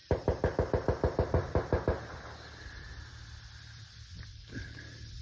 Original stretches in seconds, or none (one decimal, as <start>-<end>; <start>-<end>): 0.0-4.3; 4.8-5.2